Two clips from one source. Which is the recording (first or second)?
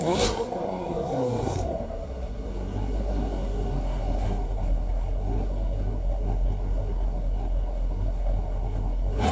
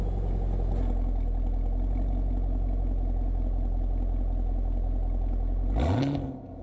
second